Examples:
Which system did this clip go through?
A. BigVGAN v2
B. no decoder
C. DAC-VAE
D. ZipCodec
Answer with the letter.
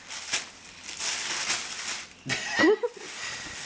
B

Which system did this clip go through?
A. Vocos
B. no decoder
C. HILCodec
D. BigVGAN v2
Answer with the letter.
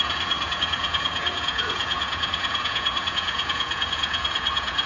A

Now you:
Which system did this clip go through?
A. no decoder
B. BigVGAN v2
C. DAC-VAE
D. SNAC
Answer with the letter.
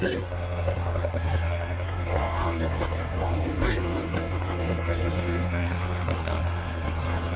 D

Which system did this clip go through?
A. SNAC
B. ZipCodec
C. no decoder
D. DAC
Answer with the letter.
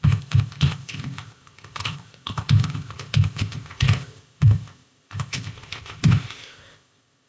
B